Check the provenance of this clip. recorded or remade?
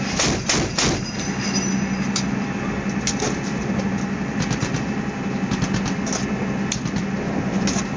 recorded